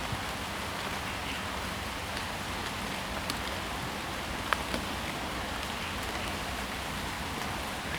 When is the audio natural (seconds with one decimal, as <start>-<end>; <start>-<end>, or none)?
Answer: 0.0-1.2; 1.9-8.0